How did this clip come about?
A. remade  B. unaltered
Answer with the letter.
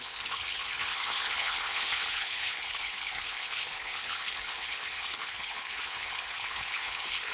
A